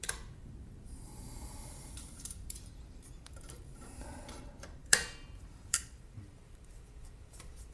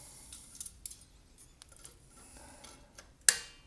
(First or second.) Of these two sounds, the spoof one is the first